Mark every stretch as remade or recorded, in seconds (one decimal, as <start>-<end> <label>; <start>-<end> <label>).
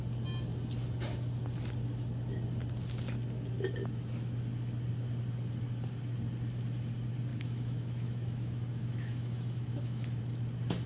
0.0-7.3 recorded; 7.3-10.2 remade; 10.2-10.9 recorded